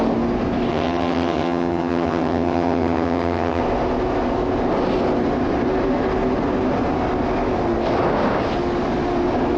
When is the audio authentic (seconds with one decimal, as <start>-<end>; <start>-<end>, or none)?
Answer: 0.0-0.7; 3.6-9.6